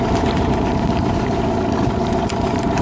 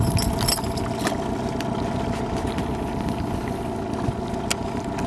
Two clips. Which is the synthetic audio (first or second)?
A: first